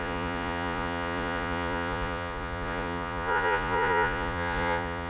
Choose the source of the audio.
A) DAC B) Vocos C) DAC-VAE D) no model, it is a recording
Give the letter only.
B